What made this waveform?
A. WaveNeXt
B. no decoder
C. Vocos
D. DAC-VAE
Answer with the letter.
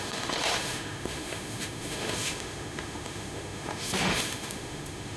D